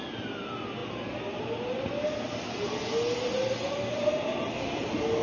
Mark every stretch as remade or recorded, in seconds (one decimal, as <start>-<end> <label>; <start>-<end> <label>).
0.0-5.2 recorded